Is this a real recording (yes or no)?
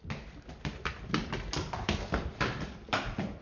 no